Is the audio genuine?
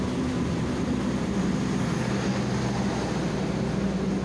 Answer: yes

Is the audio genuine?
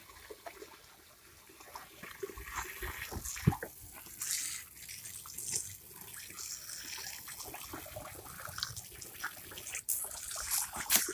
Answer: yes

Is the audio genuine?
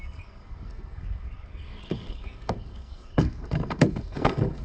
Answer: no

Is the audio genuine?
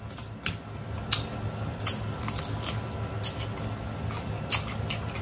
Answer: yes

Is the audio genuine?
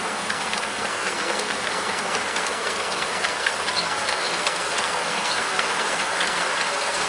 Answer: no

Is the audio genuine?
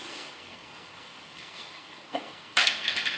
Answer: no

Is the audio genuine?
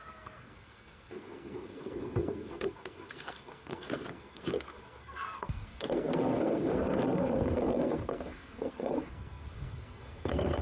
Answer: no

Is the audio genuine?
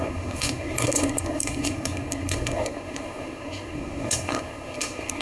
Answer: no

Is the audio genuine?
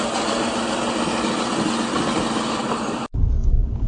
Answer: yes